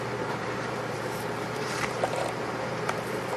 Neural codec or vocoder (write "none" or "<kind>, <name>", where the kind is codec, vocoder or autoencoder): vocoder, BigVGAN v2